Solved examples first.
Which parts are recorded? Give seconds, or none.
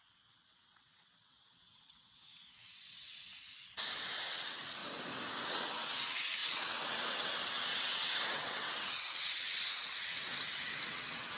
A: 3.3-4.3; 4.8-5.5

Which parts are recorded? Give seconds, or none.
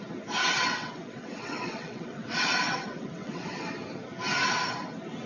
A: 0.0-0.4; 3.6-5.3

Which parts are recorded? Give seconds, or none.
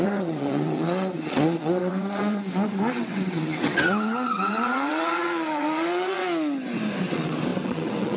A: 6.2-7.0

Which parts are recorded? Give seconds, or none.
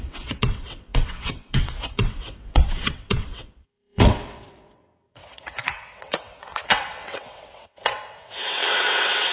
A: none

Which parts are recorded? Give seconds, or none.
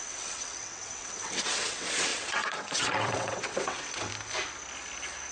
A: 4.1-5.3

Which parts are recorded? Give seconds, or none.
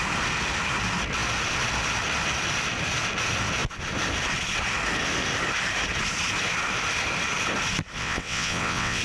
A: 0.0-8.0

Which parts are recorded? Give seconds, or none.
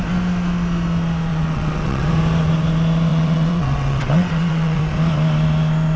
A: 0.0-1.3; 2.1-3.1; 4.8-6.0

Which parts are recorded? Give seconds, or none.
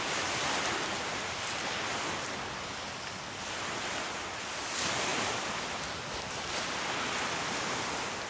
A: 0.0-8.3